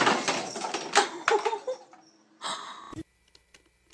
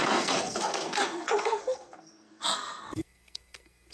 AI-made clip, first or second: second